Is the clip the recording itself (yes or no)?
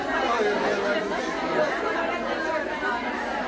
yes